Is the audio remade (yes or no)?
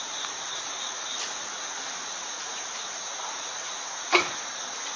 yes